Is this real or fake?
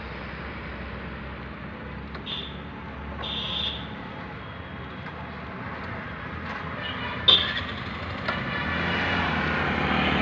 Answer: real